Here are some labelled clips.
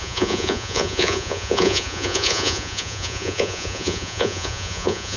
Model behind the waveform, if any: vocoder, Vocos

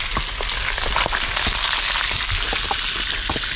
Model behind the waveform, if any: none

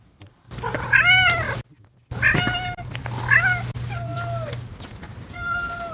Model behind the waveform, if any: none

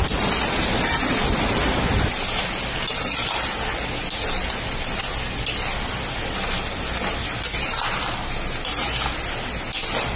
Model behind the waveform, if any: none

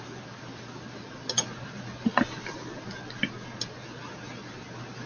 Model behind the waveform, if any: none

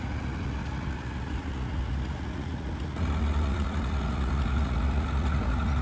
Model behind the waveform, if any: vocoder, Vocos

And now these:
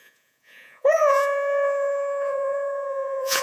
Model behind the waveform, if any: vocoder, Vocos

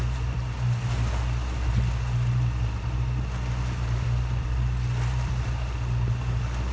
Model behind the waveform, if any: none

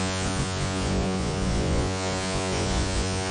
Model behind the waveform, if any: vocoder, Vocos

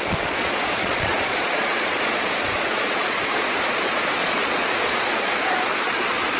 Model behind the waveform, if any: vocoder, Vocos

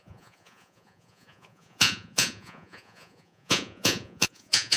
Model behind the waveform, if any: vocoder, Vocos